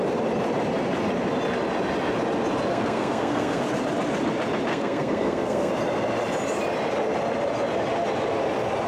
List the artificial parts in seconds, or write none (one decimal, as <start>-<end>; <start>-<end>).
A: 2.7-3.6; 4.7-5.7